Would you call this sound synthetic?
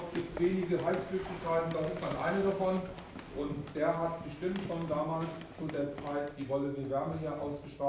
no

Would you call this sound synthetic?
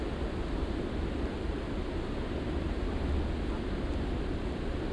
no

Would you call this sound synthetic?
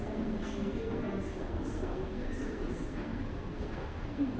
yes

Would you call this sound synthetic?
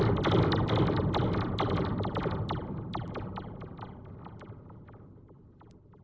no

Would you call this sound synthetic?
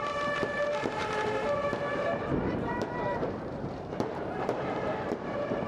yes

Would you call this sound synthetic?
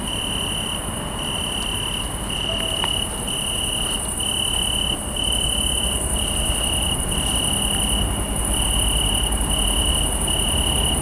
no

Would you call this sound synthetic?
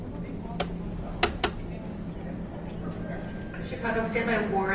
no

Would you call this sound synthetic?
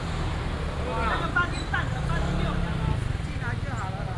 no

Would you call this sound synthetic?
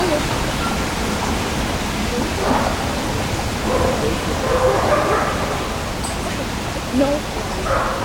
no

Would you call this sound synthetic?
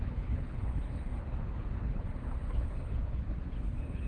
yes